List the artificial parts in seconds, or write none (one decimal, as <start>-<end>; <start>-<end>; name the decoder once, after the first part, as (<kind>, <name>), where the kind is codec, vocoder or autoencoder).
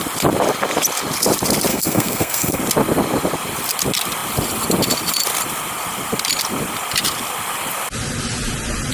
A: 1.7-2.6 (codec, SNAC)